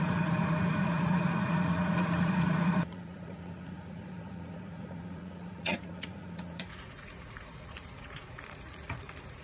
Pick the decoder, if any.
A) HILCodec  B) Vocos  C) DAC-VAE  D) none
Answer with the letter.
B